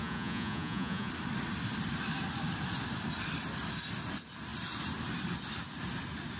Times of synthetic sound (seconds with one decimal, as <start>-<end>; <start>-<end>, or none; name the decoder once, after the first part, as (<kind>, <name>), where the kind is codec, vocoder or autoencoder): 0.0-1.1 (vocoder, Vocos)